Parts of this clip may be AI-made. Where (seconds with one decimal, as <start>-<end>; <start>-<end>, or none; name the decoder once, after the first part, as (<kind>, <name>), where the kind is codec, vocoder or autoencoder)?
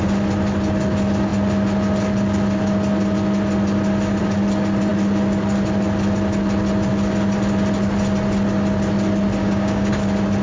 9.4-9.9 (codec, DAC)